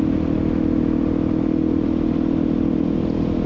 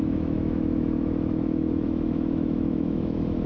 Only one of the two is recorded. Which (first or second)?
first